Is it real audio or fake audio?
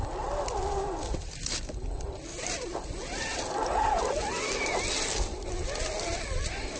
real